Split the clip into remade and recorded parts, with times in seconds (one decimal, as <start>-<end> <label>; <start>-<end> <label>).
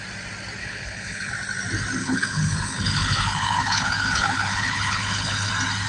0.0-0.6 recorded; 0.6-1.3 remade; 1.3-2.0 recorded; 2.0-5.5 remade; 5.5-5.9 recorded